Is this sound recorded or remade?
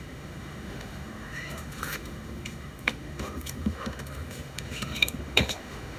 remade